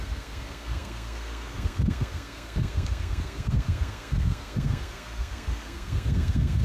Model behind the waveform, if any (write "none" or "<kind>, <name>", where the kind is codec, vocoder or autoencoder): codec, SNAC